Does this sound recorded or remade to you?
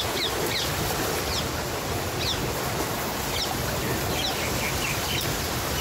recorded